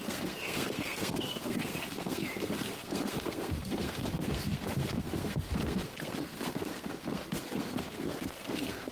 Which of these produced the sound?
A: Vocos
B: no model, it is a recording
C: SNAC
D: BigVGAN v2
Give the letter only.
C